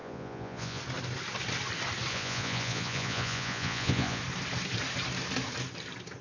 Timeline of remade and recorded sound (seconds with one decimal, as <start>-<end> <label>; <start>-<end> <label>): 0.0-0.8 remade; 0.8-2.1 recorded; 2.1-4.2 remade; 4.2-6.2 recorded